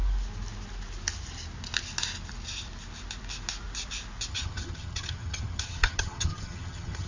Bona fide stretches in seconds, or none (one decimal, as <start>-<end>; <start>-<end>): 0.0-4.3